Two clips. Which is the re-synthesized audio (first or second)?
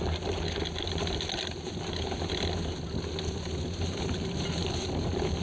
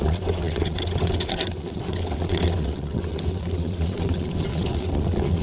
second